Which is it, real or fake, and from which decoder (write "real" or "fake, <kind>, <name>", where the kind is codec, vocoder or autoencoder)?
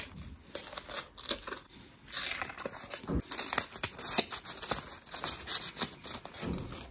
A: real